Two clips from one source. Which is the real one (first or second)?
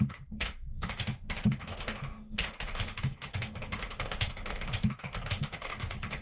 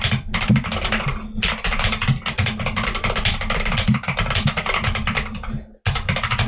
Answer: second